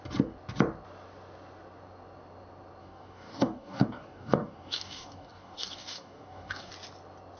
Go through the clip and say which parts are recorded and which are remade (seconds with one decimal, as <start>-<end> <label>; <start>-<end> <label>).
0.0-2.8 recorded; 2.8-6.7 remade; 6.7-7.4 recorded